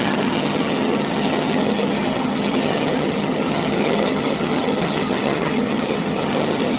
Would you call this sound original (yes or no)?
no